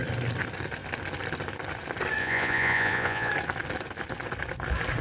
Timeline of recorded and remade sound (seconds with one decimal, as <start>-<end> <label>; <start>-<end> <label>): 0.0-2.2 recorded; 2.2-3.3 remade; 3.3-5.0 recorded